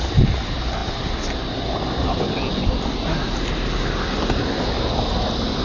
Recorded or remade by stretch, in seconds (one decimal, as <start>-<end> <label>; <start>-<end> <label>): 0.0-5.6 recorded